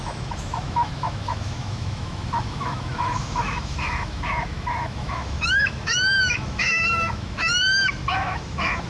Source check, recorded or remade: remade